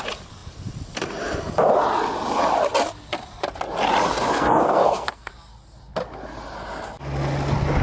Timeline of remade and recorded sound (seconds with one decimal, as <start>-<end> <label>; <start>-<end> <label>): 0.0-4.3 recorded; 4.3-5.3 remade; 5.3-7.8 recorded